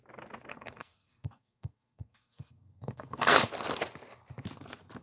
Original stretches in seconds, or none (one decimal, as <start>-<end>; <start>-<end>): 0.0-0.5; 3.5-5.0